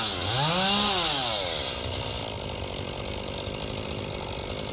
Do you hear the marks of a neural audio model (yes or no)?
no